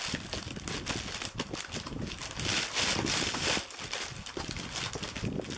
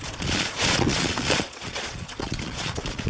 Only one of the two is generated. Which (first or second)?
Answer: second